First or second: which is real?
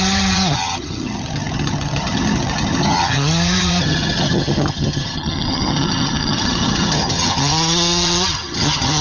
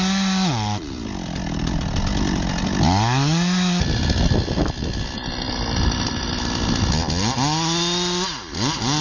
second